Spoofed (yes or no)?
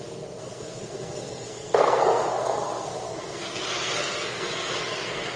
yes